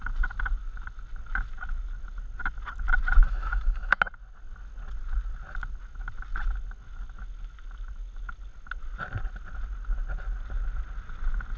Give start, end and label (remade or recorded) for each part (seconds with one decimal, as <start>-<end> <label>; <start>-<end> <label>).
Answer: 0.0-3.2 recorded; 3.2-4.0 remade; 4.0-11.6 recorded